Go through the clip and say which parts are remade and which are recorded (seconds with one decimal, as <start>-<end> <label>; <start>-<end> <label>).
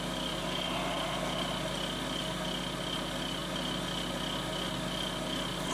0.0-5.7 recorded